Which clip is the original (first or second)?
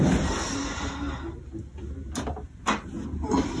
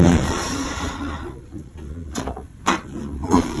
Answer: first